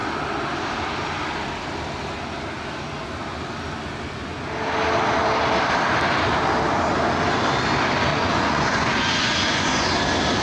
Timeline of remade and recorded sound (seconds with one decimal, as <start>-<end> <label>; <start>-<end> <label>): 0.0-8.1 recorded; 8.1-9.9 remade; 9.9-10.4 recorded